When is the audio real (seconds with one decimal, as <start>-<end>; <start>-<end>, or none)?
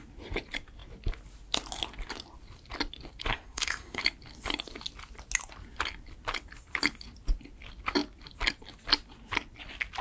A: 0.0-3.3; 4.0-10.0